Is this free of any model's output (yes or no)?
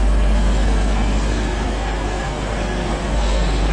no